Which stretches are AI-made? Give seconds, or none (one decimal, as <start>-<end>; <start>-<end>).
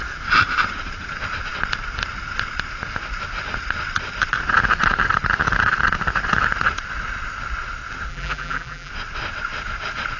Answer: 8.1-8.9